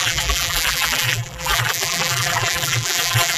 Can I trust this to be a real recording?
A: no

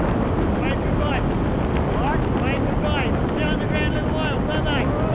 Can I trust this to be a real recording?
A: yes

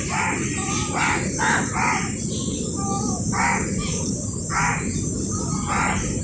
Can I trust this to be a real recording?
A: no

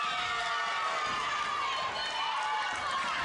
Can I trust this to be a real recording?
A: yes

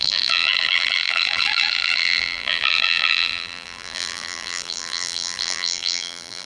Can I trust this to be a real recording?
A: no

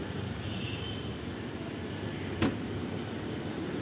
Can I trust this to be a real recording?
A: yes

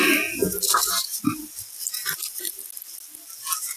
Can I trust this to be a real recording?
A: yes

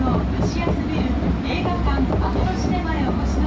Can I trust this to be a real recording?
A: yes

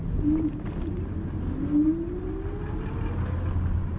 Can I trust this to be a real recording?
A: yes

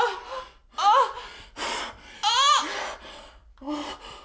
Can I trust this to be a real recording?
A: yes